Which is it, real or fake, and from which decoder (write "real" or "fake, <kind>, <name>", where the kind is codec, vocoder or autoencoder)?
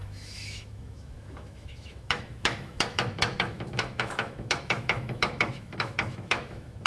fake, autoencoder, DAC-VAE